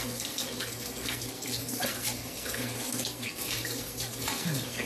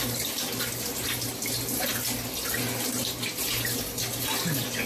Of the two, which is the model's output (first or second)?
first